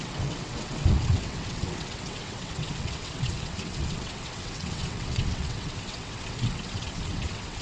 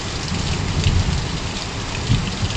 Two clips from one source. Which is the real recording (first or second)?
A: second